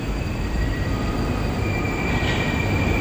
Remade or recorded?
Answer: remade